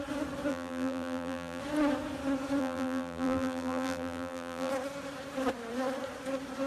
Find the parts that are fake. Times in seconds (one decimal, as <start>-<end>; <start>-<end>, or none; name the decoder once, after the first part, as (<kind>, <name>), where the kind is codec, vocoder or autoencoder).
0.5-1.6 (vocoder, BigVGAN v2); 2.6-4.7